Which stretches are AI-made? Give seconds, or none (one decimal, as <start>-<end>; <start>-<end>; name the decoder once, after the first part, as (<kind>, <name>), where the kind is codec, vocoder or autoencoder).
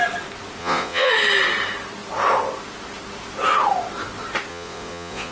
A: 0.6-1.1 (vocoder, Vocos); 4.5-5.3